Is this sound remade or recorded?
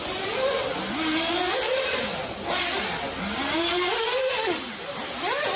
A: recorded